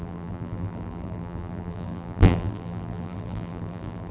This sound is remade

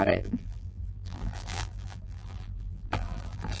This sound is remade